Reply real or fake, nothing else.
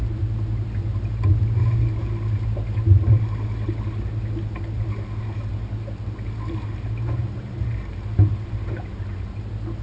real